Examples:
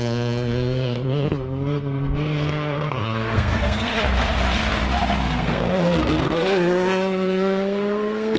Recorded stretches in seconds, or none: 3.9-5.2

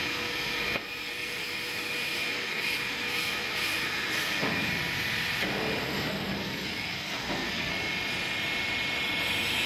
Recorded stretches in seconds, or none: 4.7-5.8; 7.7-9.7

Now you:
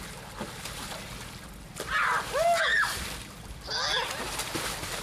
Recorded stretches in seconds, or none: 0.0-5.0